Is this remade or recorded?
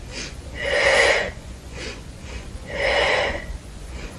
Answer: remade